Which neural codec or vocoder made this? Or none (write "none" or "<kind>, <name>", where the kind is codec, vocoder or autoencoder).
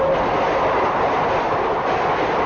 none